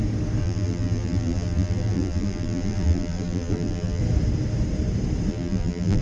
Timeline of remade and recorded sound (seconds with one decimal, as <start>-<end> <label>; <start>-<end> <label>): 0.0-0.4 recorded; 0.4-4.0 remade; 4.0-5.3 recorded; 5.3-6.0 remade